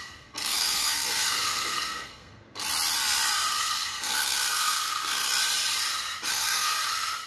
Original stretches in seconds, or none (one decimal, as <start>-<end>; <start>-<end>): 2.6-3.5; 5.2-6.3; 6.7-7.3